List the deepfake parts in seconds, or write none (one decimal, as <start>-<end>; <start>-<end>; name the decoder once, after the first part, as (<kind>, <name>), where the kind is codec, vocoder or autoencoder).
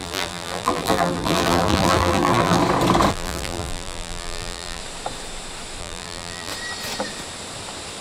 0.0-2.6 (vocoder, BigVGAN v2); 3.1-4.8; 5.8-6.5